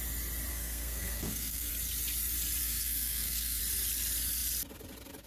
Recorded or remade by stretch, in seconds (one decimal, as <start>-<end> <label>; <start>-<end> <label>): 0.0-0.5 recorded; 0.5-1.7 remade; 1.7-2.6 recorded; 2.6-3.6 remade; 3.6-5.3 recorded